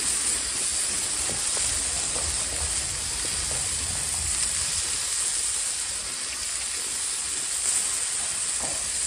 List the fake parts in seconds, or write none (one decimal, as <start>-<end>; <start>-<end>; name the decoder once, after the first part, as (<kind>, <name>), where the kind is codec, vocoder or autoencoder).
none